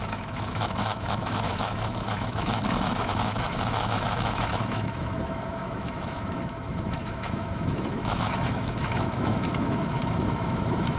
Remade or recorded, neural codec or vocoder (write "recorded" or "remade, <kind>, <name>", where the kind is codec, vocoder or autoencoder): remade, autoencoder, DAC-VAE